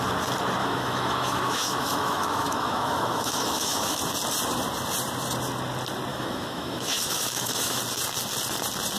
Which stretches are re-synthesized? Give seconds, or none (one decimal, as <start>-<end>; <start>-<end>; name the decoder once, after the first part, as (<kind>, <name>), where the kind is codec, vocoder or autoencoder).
0.6-4.0 (autoencoder, DAC-VAE); 6.1-7.8